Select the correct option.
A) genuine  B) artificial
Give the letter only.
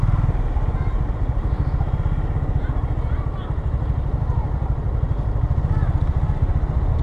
A